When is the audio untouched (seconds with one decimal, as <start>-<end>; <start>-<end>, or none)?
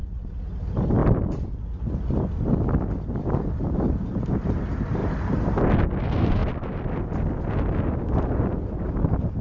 0.0-1.0; 3.2-5.0; 5.6-9.4